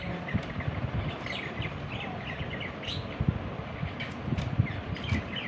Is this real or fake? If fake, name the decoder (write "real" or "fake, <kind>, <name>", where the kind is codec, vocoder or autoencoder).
real